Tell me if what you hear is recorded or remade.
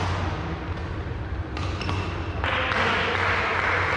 recorded